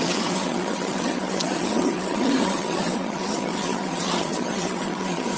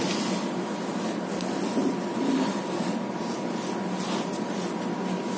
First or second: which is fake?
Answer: first